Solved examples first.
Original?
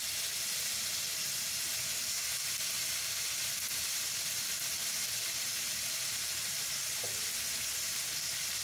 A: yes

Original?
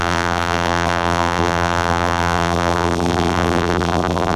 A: no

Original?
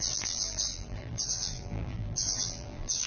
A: no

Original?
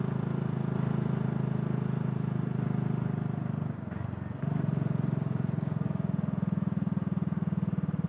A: yes